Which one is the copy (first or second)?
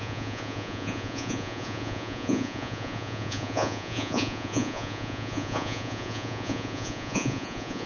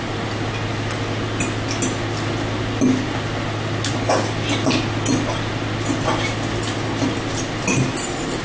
first